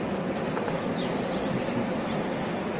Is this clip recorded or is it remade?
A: recorded